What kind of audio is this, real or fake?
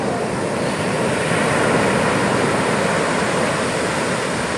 real